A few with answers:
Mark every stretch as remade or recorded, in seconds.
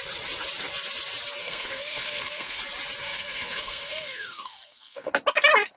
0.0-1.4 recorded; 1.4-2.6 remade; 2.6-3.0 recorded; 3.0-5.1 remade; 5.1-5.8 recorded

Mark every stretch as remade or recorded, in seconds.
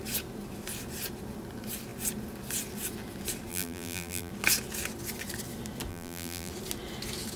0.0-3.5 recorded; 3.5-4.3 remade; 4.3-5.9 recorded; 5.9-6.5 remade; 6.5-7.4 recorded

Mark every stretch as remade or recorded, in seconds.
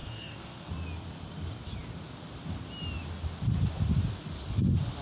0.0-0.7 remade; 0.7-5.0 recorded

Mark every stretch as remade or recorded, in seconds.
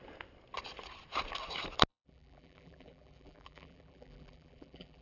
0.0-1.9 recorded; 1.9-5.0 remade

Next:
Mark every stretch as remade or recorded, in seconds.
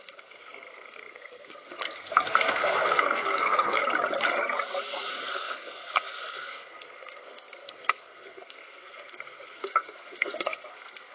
0.0-3.8 remade; 3.8-5.1 recorded; 5.1-11.1 remade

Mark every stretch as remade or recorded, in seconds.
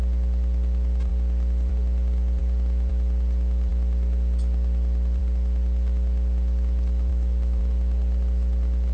0.0-7.1 recorded; 7.1-7.6 remade; 7.6-8.9 recorded